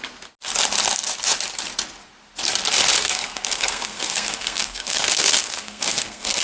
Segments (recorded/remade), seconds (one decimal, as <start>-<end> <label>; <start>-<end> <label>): 0.0-3.0 recorded; 3.0-6.4 remade